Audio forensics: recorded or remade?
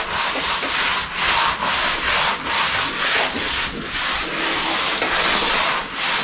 recorded